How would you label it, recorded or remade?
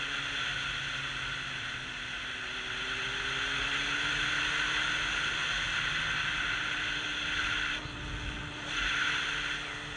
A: recorded